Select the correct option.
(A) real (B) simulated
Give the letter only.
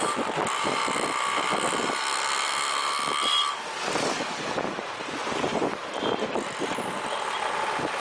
B